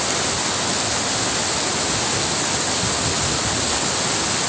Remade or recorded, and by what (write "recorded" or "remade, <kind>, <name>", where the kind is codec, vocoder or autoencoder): recorded